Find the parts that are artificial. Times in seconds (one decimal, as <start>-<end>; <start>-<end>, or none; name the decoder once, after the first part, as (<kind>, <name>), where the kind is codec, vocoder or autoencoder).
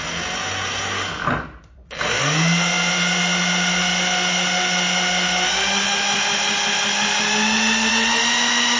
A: none